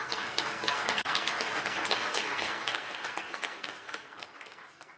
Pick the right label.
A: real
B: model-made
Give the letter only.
B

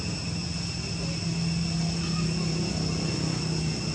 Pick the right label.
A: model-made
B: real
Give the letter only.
B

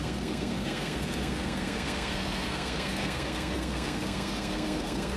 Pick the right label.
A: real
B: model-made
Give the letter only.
B